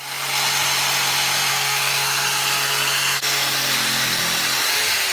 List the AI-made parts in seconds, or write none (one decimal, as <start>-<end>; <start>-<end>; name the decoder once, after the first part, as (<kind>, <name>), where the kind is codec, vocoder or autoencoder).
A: 1.5-4.2 (codec, SNAC)